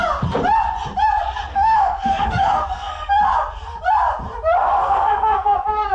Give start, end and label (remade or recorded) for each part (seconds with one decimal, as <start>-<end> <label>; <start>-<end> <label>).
0.0-1.5 recorded; 1.5-3.1 remade; 3.1-4.6 recorded; 4.6-5.9 remade